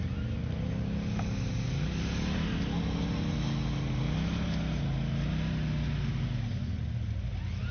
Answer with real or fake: real